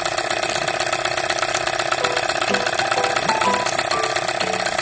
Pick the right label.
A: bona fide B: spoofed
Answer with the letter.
A